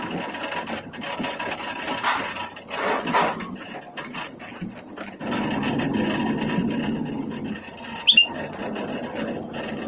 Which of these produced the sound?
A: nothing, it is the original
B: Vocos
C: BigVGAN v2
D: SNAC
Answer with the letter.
A